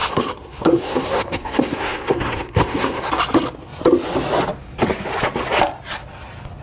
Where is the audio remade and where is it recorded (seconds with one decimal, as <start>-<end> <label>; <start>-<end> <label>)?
0.0-3.1 remade; 3.1-6.6 recorded